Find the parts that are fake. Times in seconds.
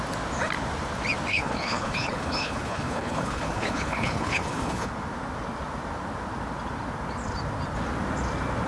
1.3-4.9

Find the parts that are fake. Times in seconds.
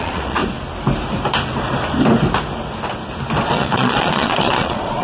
0.0-0.4; 3.4-5.0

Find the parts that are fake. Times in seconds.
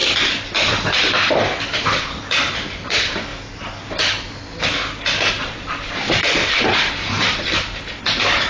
1.7-3.3; 5.3-8.5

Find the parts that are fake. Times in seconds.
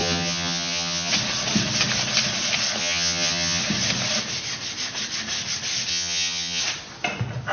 0.0-1.1; 2.8-3.6; 5.9-6.6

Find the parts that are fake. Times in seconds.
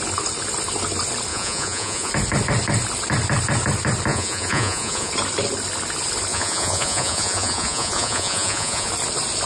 1.3-2.1; 4.1-5.1; 6.3-8.9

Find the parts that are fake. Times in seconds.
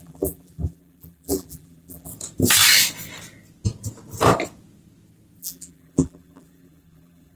0.0-2.1; 5.4-7.4